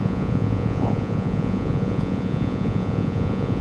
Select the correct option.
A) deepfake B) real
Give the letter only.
A